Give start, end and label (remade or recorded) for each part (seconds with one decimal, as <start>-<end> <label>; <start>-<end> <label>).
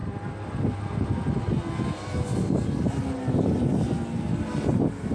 0.0-5.1 recorded